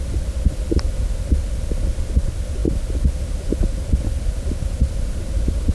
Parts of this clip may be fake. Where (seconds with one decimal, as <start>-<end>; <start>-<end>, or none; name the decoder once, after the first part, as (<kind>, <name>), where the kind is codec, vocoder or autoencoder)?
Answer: none